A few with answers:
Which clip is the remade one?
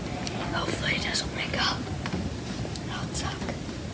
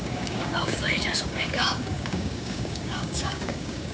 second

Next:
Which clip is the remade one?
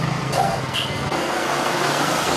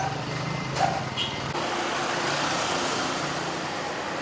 first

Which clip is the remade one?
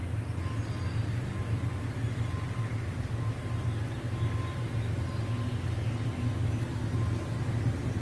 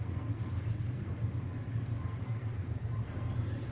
second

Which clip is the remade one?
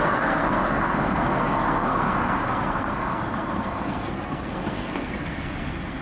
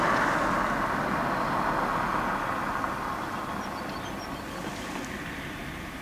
first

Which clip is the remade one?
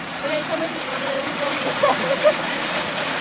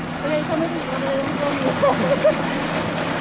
first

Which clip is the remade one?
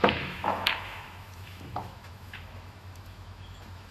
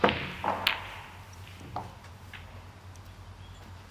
first